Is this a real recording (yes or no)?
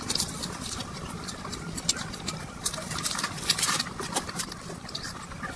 yes